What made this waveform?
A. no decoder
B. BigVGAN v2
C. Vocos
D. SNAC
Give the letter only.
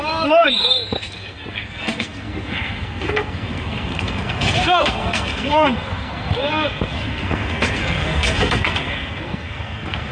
D